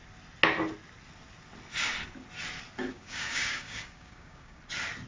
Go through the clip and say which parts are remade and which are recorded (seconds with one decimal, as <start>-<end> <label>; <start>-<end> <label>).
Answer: 0.0-2.9 recorded; 2.9-4.6 remade; 4.6-5.1 recorded